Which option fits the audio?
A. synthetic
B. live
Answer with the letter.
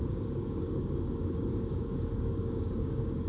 A